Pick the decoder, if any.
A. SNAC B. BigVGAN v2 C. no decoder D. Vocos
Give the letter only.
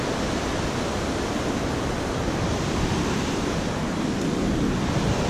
C